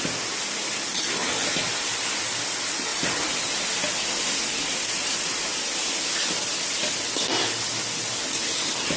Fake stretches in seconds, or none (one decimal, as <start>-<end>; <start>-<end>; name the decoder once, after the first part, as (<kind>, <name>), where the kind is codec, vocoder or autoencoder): none